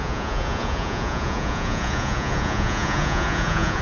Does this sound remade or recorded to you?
remade